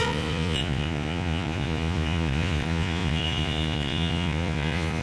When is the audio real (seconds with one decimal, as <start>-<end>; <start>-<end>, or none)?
none